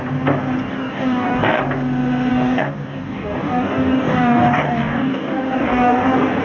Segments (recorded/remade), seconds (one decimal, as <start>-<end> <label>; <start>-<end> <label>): 0.0-0.7 recorded; 0.7-1.6 remade; 1.6-2.3 recorded; 2.3-6.4 remade